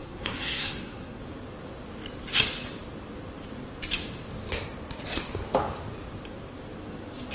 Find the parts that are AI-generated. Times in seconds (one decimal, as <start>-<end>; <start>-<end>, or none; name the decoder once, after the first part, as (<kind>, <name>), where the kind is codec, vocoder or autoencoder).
0.0-1.2 (codec, SNAC)